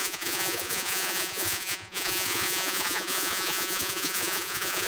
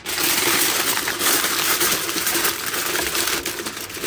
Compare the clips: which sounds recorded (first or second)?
second